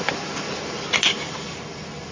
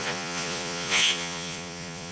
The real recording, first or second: first